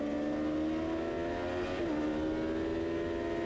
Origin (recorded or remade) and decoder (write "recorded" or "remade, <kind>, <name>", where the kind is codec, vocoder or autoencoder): recorded